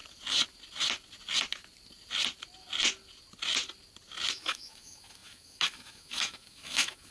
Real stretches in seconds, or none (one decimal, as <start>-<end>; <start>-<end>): 0.0-4.3